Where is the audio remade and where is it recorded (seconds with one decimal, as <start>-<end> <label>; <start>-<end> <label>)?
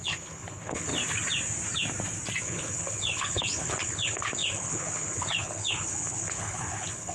0.0-0.9 remade; 0.9-2.4 recorded; 2.4-7.1 remade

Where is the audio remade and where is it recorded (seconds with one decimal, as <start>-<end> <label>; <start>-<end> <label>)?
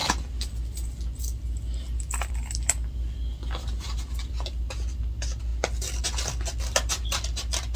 0.0-7.8 recorded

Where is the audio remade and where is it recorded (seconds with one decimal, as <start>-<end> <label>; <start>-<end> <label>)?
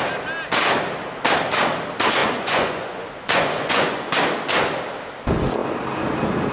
0.0-2.2 recorded; 2.2-4.1 remade; 4.1-6.5 recorded